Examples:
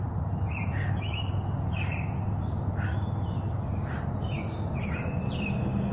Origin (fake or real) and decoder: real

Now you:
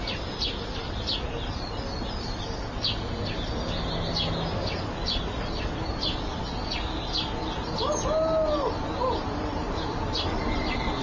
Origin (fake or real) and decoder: real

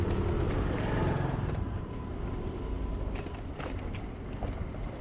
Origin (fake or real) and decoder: real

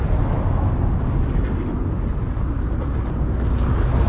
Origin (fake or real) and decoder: real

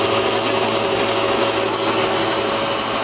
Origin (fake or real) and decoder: real